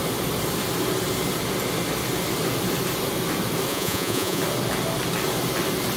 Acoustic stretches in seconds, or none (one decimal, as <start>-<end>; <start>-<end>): 0.0-3.7; 4.4-6.0